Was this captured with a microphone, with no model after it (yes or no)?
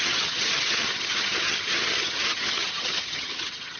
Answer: no